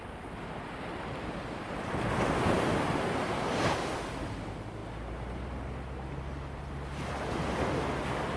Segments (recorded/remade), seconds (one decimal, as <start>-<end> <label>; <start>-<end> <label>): 0.0-8.4 recorded